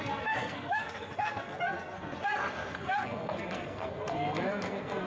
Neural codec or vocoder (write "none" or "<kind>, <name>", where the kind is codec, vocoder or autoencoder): codec, SNAC